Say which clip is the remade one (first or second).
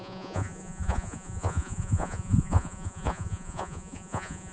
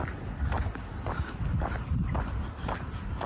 first